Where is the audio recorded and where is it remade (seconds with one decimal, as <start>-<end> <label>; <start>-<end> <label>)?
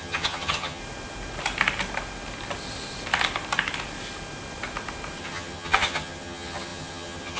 0.0-0.8 remade; 0.8-5.2 recorded; 5.2-7.4 remade